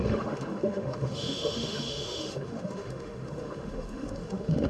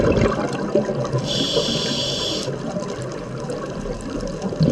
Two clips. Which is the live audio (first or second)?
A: second